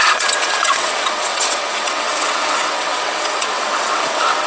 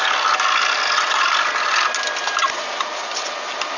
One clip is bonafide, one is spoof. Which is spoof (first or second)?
first